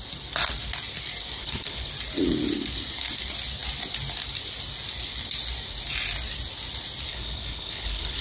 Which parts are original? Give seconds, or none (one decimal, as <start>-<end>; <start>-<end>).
0.0-1.4; 1.9-7.1